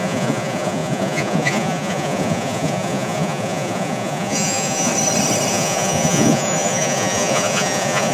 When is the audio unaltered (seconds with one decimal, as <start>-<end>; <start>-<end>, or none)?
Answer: 4.9-5.5